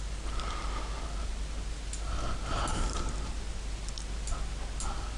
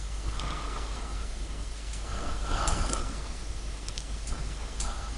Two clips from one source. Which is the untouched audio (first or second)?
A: first